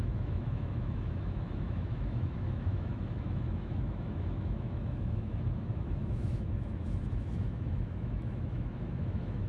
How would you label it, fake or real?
fake